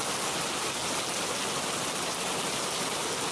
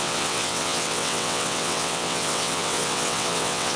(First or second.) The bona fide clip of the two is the first